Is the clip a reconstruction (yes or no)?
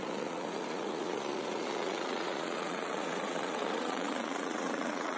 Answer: yes